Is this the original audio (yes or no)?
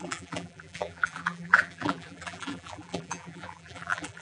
no